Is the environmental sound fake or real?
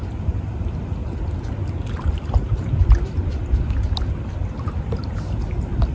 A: real